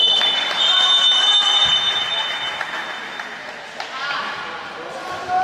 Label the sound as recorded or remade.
recorded